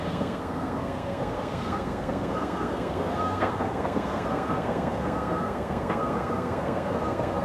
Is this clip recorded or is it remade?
remade